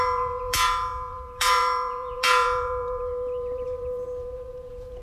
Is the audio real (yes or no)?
no